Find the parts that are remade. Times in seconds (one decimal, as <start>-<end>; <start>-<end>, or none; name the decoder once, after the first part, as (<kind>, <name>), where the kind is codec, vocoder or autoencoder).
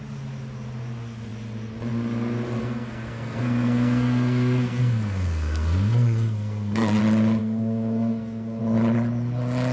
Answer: 2.6-7.0 (codec, SNAC); 7.4-8.6